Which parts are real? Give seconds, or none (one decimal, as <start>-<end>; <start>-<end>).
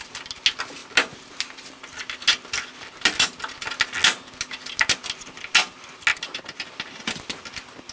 0.0-7.9